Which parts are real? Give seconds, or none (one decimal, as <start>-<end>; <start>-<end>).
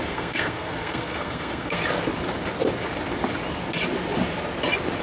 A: 1.8-5.0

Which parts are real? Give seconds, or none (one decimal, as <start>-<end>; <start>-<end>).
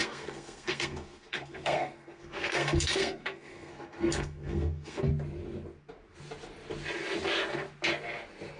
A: 5.1-8.6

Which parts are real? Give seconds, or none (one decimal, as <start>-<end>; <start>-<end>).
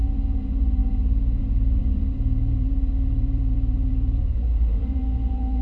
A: none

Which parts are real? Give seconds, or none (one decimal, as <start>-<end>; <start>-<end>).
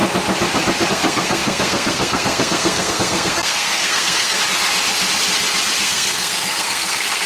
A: 0.0-0.9; 4.4-5.8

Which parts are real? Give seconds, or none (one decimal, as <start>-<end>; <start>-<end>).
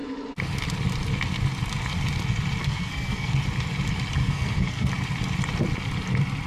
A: 0.0-2.6; 3.3-4.2; 4.9-6.5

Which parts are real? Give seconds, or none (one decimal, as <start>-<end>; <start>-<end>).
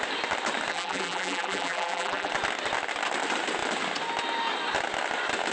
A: 0.0-0.7; 2.3-5.5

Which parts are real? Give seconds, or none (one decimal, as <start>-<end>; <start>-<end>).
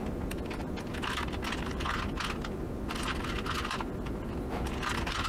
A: 0.0-5.3